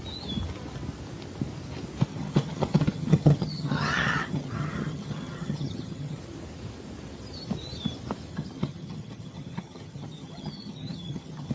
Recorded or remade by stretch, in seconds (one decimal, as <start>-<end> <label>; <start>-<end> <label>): 0.0-2.1 recorded; 2.1-6.2 remade; 6.2-8.3 recorded; 8.3-11.5 remade